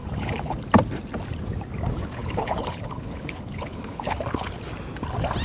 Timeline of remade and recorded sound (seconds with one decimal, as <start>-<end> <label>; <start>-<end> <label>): 0.0-0.6 remade; 0.6-2.2 recorded; 2.2-4.6 remade; 4.6-5.4 recorded